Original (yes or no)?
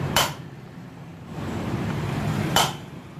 no